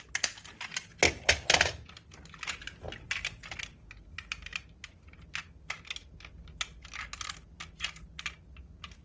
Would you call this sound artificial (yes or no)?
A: no